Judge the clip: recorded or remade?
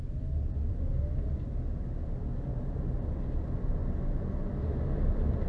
recorded